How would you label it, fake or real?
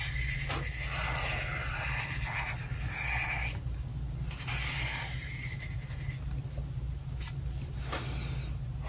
real